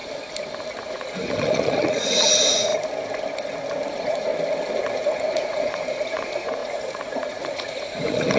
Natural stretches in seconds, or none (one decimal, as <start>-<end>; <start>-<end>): 0.0-0.8; 2.7-3.9; 4.3-4.9